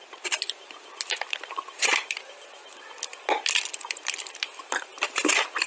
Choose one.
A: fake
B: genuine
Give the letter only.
B